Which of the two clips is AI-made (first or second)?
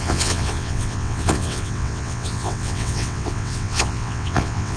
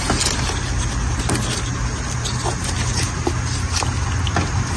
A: first